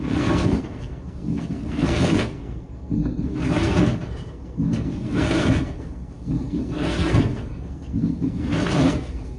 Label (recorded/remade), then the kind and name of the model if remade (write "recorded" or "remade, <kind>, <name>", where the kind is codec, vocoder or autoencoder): remade, codec, SNAC